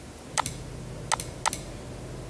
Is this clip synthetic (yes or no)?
no